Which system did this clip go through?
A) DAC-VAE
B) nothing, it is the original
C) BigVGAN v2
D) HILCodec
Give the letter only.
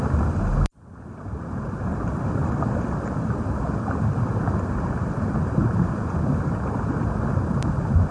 C